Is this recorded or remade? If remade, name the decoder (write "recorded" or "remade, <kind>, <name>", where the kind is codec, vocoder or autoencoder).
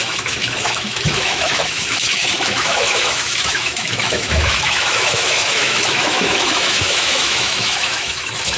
remade, autoencoder, DAC-VAE